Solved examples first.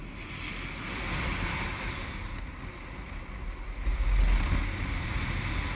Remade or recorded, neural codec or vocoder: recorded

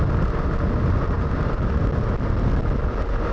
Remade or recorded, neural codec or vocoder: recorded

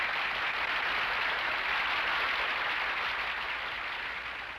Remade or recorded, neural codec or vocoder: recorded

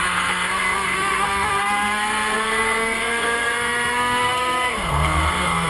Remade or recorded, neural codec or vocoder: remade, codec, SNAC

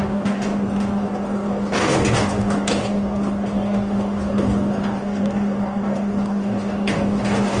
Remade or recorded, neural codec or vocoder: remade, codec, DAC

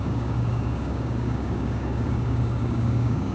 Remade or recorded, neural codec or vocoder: remade, codec, DAC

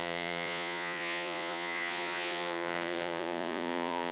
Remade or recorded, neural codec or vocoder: remade, vocoder, Vocos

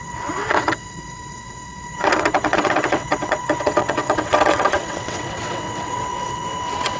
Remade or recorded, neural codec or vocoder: remade, vocoder, WaveNeXt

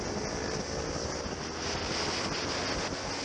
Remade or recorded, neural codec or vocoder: recorded